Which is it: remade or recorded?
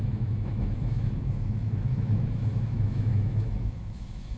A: remade